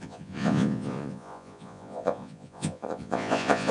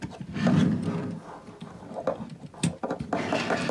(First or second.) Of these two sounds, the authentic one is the second